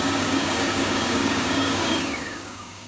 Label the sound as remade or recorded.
remade